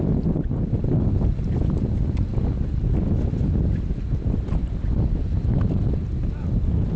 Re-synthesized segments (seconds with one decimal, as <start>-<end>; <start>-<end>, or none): none